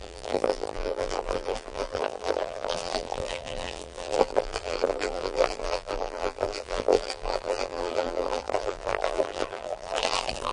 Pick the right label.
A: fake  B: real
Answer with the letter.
A